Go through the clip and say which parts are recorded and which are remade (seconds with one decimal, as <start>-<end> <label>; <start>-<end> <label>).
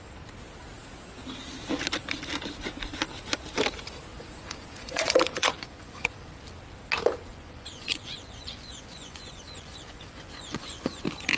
0.0-4.1 recorded; 4.1-6.4 remade; 6.4-7.3 recorded; 7.3-11.0 remade; 11.0-11.4 recorded